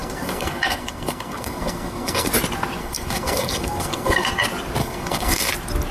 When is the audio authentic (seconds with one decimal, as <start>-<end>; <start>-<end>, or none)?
2.3-2.8; 4.3-4.8; 5.5-5.9